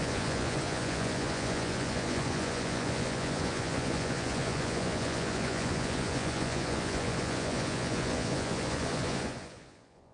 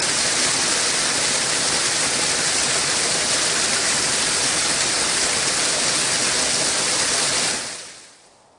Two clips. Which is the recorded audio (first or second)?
second